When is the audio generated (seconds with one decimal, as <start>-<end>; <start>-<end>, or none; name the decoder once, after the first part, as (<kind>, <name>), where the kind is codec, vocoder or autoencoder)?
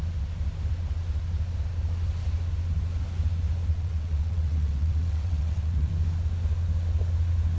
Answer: 3.7-5.9 (vocoder, WaveNeXt)